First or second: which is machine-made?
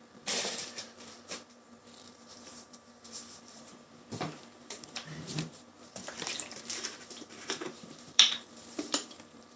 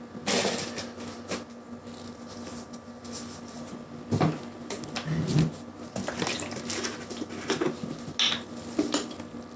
first